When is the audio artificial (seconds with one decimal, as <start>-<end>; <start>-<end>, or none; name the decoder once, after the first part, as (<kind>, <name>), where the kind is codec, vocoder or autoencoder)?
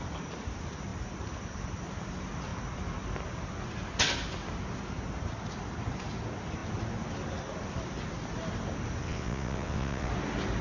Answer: 9.0-10.1 (vocoder, WaveNeXt)